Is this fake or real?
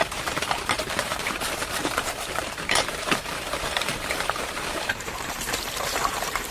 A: fake